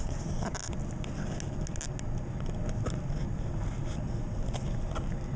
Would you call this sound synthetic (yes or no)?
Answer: no